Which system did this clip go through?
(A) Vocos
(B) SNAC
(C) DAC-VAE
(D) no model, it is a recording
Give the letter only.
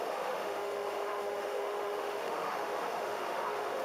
C